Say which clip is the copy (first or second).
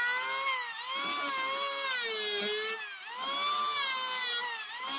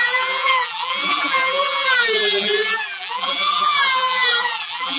second